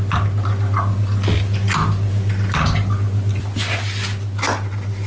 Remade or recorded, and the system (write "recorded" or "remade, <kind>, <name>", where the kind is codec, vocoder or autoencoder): recorded